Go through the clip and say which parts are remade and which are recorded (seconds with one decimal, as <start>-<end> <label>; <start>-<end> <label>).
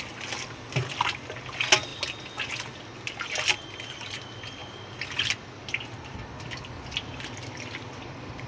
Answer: 0.0-8.5 recorded